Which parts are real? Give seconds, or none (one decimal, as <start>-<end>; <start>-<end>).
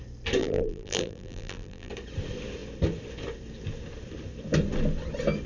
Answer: 0.0-0.4; 1.9-5.5